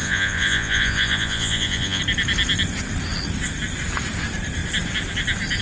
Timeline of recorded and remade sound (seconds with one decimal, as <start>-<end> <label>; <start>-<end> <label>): 0.0-2.0 remade; 2.0-5.6 recorded